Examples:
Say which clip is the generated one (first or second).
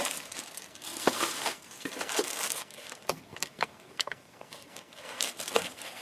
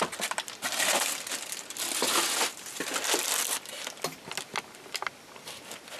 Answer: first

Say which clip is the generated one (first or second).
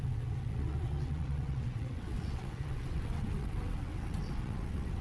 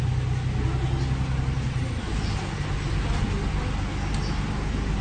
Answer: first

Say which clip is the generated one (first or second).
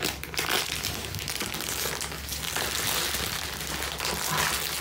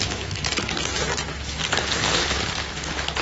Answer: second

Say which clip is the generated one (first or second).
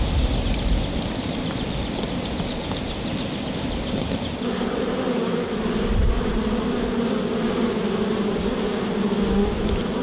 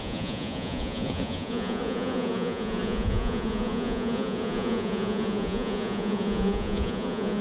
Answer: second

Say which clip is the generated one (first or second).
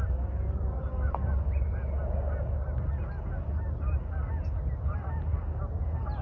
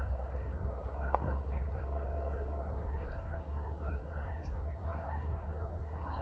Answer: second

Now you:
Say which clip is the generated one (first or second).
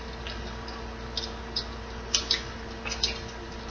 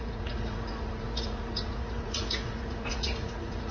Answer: second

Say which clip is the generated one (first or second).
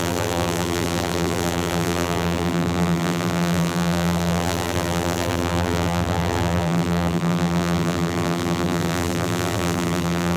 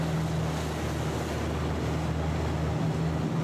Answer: first